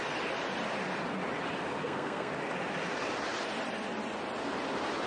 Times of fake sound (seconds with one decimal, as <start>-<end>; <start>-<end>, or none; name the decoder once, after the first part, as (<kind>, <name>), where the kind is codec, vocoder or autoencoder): 1.8-2.3 (codec, SNAC)